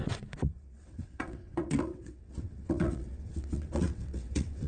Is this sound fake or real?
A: fake